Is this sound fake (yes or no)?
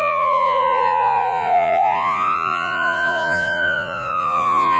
yes